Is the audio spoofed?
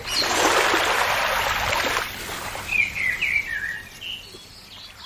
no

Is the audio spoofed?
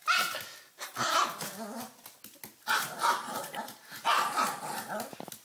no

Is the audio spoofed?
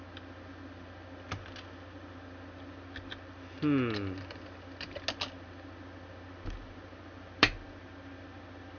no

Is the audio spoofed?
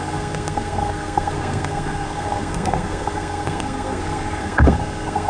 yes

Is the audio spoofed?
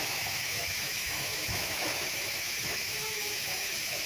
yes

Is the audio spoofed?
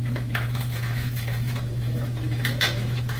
yes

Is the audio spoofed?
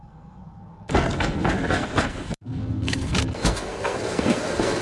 yes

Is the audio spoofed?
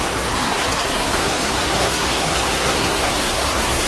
yes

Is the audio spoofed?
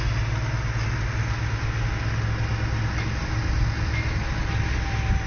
no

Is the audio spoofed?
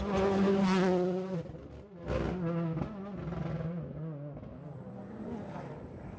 no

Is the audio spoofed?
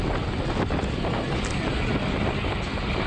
no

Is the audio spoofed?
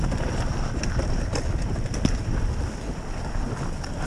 no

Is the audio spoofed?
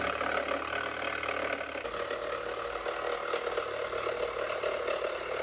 no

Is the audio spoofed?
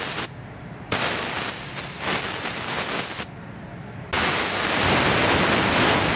no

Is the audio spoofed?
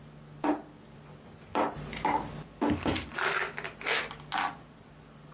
no